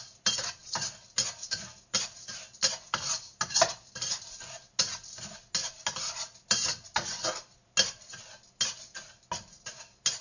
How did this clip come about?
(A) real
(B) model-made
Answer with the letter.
A